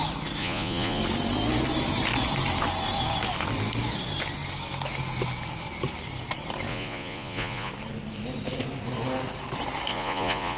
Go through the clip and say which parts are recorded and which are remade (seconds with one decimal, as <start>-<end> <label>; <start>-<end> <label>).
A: 0.0-0.4 recorded; 0.4-1.0 remade; 1.0-6.7 recorded; 6.7-7.7 remade; 7.7-9.9 recorded; 9.9-10.6 remade